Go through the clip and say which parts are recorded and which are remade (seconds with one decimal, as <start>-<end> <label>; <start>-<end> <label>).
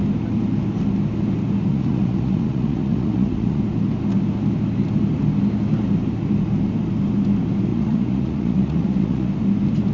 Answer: 0.0-1.7 recorded; 1.7-3.6 remade; 3.6-7.7 recorded; 7.7-9.3 remade; 9.3-9.9 recorded